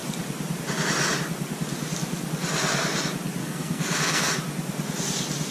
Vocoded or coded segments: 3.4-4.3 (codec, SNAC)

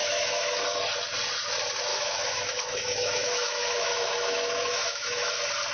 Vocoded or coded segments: 0.0-0.6 (autoencoder, DAC-VAE); 1.9-5.3